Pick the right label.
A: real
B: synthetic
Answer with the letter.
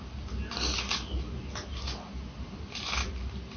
A